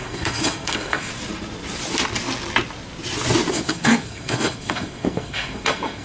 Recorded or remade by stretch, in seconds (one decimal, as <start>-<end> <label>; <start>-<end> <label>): 0.0-1.1 remade; 1.1-3.5 recorded; 3.5-6.0 remade

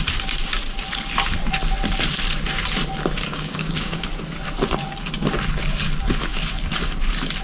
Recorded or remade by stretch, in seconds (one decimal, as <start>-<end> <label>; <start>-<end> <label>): 0.0-3.3 recorded; 3.3-4.0 remade; 4.0-7.4 recorded

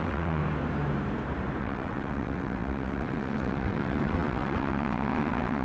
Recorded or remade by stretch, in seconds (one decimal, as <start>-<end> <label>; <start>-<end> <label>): 0.0-0.4 remade; 0.4-1.6 recorded; 1.6-5.6 remade

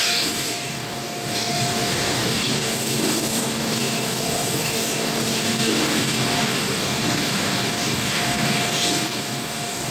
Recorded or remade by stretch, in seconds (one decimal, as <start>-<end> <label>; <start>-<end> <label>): 0.0-9.9 remade

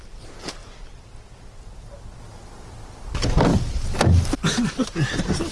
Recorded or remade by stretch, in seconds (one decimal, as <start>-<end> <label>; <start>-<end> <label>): 0.0-5.5 recorded

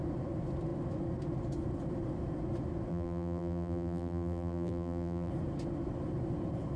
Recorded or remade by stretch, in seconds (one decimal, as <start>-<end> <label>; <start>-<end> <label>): 0.0-2.9 recorded; 2.9-5.3 remade; 5.3-6.8 recorded

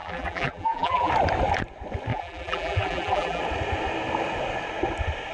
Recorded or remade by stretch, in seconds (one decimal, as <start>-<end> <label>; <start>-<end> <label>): 0.0-1.1 remade; 1.1-2.1 recorded; 2.1-3.4 remade; 3.4-5.3 recorded

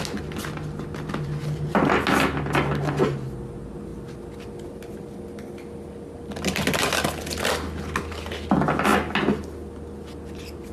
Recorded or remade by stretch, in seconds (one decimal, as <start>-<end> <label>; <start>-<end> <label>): 0.0-10.7 recorded